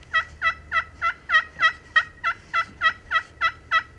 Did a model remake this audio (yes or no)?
no